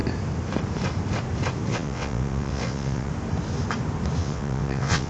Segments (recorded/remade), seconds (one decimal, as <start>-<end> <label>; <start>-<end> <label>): 0.0-1.7 recorded; 1.7-3.1 remade; 3.1-4.2 recorded; 4.2-5.1 remade